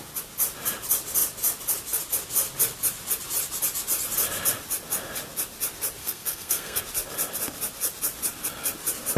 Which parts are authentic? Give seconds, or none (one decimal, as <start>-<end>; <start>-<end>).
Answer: 0.0-6.0; 6.8-9.2